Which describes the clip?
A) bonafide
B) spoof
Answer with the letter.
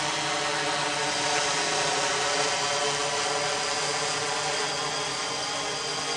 A